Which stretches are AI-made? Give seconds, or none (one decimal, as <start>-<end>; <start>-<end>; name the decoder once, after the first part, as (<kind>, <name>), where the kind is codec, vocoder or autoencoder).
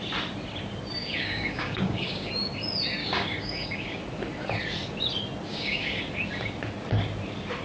1.0-2.3 (codec, DAC); 3.0-4.0; 5.5-6.0